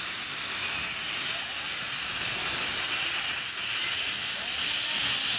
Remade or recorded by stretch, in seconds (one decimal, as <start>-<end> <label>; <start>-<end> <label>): 0.0-5.4 recorded